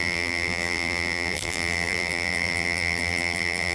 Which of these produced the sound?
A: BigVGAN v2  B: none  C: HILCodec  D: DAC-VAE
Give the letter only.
A